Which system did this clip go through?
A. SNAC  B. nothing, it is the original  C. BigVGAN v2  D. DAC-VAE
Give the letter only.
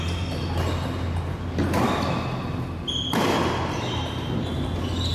B